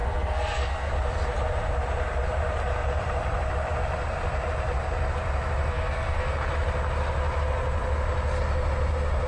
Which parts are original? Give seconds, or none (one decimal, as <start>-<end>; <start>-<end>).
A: 0.9-5.7; 6.3-9.3